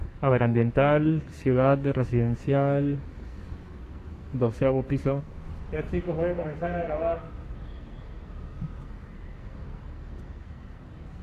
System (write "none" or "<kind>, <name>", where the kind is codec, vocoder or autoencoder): codec, SNAC